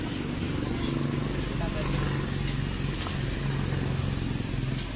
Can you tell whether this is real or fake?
real